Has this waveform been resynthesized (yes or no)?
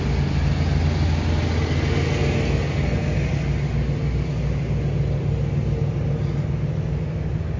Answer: no